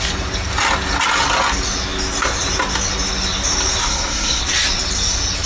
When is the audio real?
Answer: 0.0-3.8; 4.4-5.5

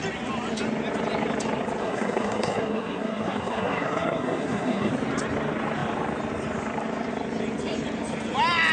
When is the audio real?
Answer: 0.0-1.8; 4.9-8.7

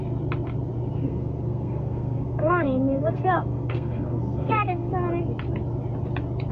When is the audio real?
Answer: 0.0-1.0; 4.9-6.5

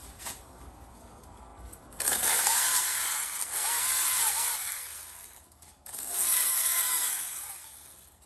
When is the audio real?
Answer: none

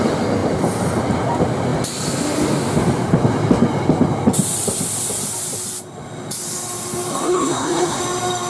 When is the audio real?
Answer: 0.0-7.1; 8.0-8.5

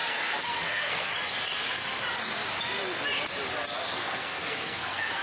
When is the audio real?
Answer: 1.1-3.9

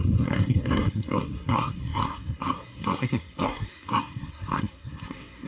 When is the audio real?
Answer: none